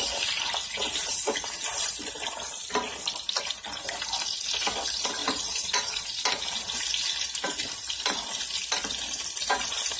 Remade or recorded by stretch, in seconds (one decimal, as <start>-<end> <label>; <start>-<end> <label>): 0.0-5.2 recorded; 5.2-6.1 remade; 6.1-10.0 recorded